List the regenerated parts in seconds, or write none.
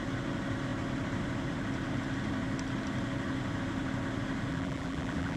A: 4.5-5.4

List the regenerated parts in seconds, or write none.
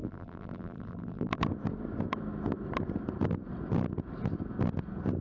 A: 0.0-1.4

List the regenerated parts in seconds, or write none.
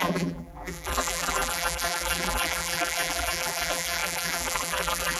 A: 0.0-5.2